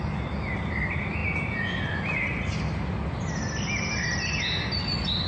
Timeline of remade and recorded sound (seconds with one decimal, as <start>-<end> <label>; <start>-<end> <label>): 0.0-5.3 recorded